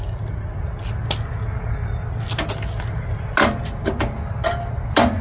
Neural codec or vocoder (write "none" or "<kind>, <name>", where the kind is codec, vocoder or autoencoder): none